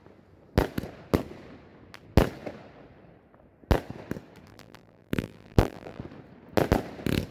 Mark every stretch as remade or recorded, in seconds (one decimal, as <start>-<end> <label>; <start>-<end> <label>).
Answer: 0.0-4.5 recorded; 4.5-6.0 remade; 6.0-7.3 recorded